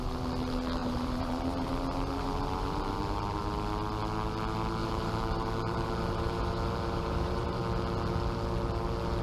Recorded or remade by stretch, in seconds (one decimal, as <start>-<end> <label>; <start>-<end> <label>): 0.0-0.8 recorded; 0.8-1.7 remade; 1.7-2.2 recorded; 2.2-3.4 remade; 3.4-4.8 recorded; 4.8-7.6 remade; 7.6-9.2 recorded